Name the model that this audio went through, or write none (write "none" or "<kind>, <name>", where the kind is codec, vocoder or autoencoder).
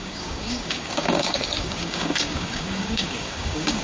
codec, DAC